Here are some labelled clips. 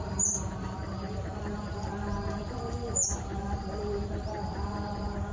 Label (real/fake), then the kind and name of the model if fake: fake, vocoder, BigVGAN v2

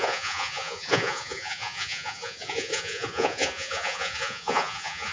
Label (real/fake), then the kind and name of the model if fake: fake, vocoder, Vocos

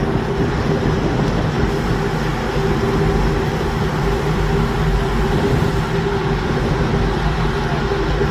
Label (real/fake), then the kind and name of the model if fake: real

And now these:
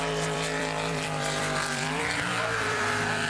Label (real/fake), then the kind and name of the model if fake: fake, vocoder, BigVGAN v2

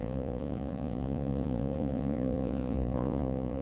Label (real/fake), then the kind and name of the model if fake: fake, vocoder, Vocos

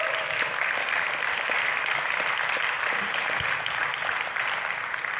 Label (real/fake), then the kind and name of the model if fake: real